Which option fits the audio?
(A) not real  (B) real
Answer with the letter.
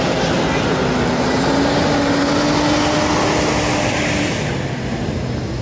B